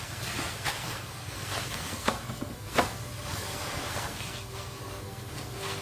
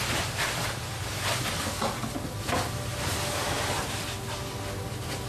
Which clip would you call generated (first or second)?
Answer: first